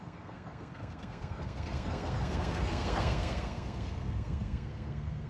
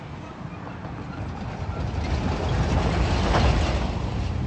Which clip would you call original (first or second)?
second